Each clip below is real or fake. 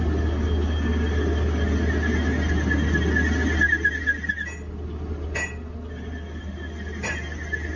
real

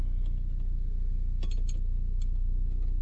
real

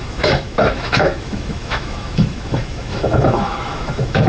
fake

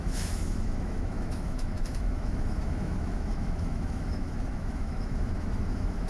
fake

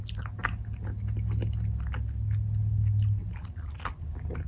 real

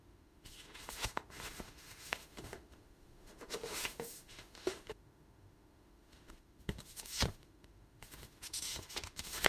fake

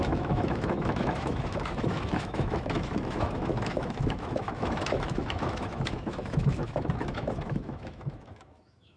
fake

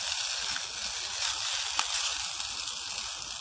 real